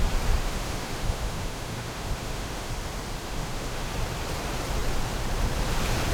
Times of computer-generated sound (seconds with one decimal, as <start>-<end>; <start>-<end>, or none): 0.4-2.7; 3.2-3.9